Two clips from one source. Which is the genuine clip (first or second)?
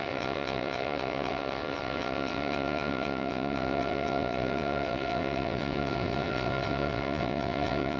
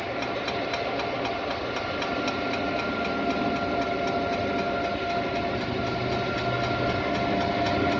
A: second